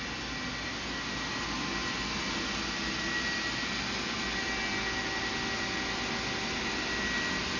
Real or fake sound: real